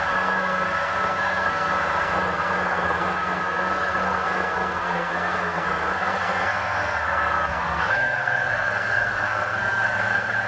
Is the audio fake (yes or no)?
yes